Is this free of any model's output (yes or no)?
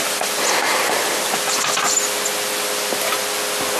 yes